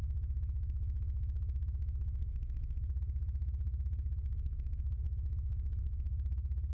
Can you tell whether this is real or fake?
fake